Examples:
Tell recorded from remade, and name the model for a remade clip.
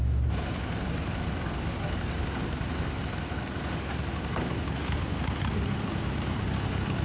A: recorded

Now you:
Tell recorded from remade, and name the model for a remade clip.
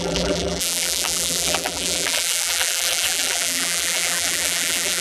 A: remade, vocoder, BigVGAN v2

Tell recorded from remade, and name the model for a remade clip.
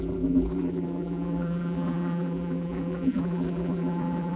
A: remade, vocoder, BigVGAN v2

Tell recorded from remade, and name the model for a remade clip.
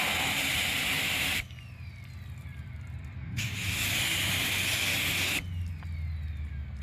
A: recorded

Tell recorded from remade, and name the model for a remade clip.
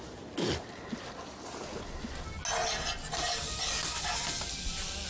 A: recorded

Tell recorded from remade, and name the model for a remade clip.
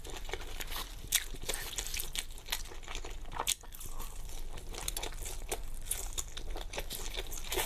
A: recorded